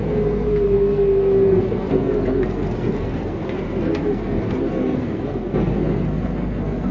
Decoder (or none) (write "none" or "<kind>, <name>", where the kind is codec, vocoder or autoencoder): codec, SNAC